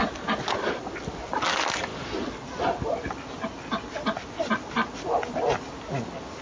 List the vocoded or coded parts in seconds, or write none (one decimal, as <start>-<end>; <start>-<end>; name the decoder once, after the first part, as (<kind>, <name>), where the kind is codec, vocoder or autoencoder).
none